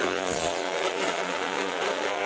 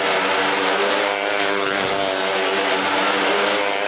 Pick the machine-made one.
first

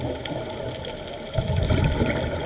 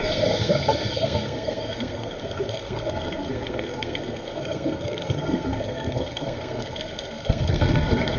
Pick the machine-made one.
second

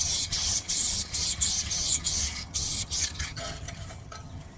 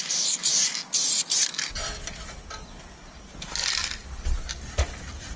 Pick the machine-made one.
first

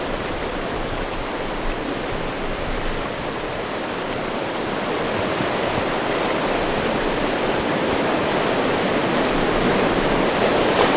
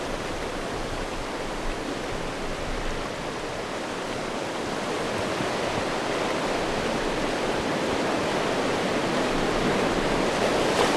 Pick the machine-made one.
first